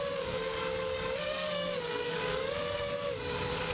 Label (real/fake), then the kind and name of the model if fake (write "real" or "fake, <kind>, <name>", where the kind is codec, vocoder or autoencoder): fake, codec, DAC